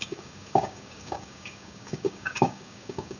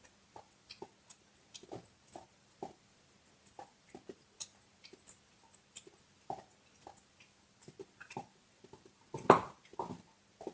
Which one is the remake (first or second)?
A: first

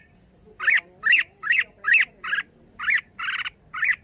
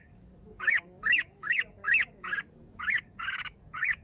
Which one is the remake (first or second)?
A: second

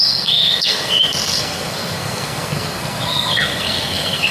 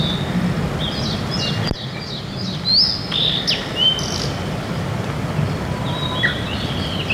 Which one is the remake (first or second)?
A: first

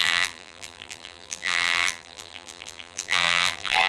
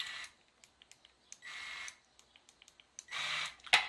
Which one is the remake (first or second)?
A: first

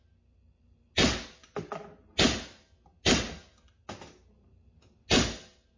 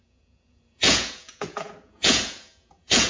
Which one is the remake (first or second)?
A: second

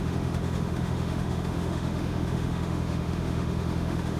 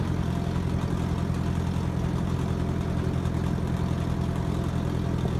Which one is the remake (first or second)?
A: first